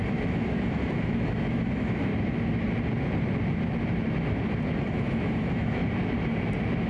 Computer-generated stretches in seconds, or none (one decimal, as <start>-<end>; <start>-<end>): 0.0-2.1; 4.8-5.8